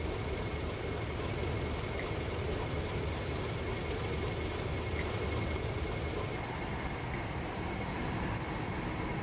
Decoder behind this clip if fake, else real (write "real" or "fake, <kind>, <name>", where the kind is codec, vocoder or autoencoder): real